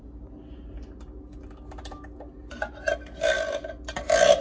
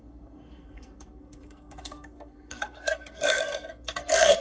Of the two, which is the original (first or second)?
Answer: first